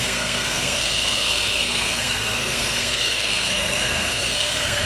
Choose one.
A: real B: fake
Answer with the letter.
B